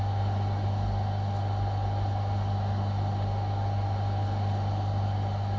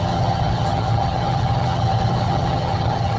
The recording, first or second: first